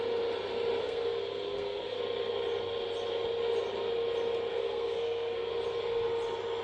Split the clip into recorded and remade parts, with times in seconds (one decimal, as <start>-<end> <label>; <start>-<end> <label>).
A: 0.0-0.8 recorded; 0.8-2.0 remade; 2.0-4.5 recorded; 4.5-5.5 remade; 5.5-6.6 recorded